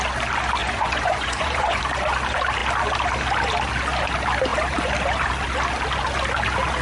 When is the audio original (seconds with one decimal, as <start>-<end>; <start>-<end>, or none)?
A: 0.0-0.6; 1.8-6.8